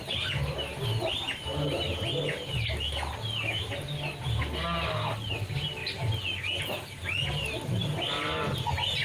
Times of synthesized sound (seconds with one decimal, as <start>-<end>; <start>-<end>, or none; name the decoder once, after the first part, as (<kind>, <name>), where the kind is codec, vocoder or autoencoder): none